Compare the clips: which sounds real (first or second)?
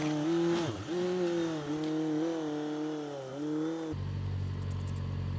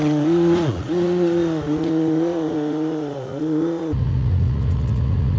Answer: first